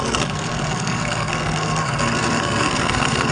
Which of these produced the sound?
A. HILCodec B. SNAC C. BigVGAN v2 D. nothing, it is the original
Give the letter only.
B